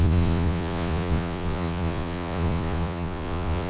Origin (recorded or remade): remade